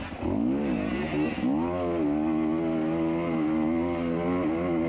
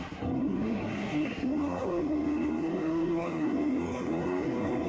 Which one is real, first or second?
first